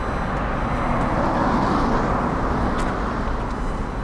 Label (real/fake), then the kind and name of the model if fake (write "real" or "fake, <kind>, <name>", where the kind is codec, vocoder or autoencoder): real